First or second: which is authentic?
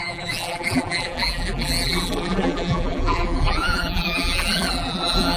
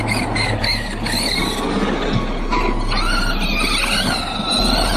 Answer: second